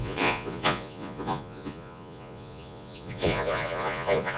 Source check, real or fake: fake